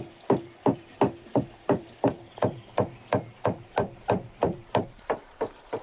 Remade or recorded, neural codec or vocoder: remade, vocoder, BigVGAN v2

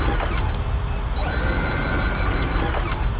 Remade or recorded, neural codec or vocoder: recorded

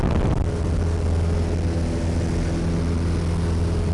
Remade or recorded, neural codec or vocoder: recorded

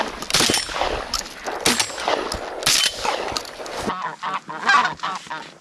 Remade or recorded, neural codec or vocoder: recorded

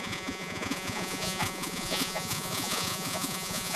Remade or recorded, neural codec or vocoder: remade, vocoder, Vocos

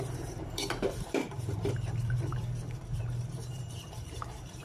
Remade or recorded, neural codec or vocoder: remade, vocoder, BigVGAN v2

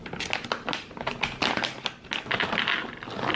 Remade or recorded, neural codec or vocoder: recorded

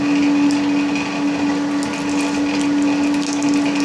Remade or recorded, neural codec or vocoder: recorded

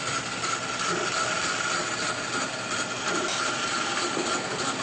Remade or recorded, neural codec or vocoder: recorded